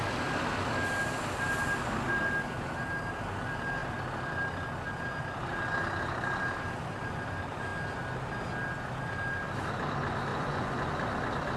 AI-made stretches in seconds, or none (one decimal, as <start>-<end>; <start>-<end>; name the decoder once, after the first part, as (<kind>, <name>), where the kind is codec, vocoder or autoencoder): 10.3-10.9 (vocoder, Vocos)